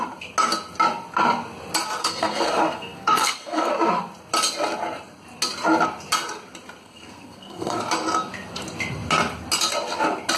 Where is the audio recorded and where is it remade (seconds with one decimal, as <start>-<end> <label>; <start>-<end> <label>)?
0.0-2.0 recorded; 2.0-3.7 remade; 3.7-6.8 recorded; 6.8-7.8 remade; 7.8-10.4 recorded